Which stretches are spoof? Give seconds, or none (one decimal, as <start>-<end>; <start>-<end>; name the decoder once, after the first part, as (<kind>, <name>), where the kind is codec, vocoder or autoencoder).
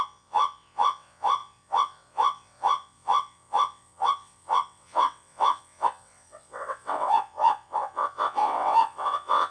0.0-9.5 (vocoder, WaveNeXt)